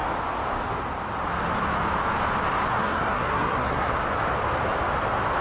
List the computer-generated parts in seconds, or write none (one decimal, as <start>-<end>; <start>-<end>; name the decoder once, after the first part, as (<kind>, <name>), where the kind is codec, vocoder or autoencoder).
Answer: 2.7-3.9 (codec, SNAC)